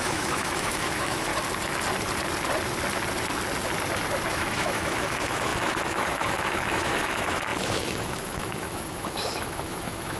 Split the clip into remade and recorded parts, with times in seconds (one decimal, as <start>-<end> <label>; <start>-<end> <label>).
0.0-1.3 remade; 1.3-4.3 recorded; 4.3-10.2 remade